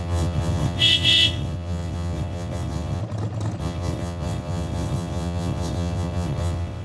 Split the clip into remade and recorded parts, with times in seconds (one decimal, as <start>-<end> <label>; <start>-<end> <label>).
0.0-3.0 remade; 3.0-3.6 recorded; 3.6-6.8 remade